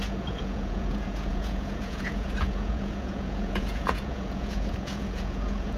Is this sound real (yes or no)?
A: no